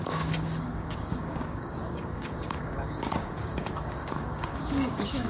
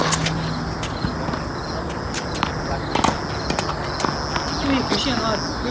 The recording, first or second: second